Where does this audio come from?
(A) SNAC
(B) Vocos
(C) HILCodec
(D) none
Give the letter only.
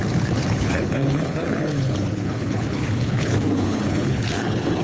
C